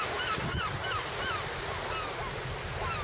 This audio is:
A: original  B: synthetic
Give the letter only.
A